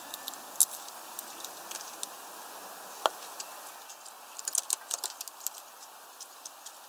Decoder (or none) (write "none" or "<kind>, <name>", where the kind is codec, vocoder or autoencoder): none